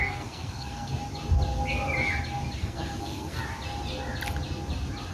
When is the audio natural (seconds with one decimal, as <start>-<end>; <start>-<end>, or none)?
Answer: 0.9-2.6; 3.4-5.1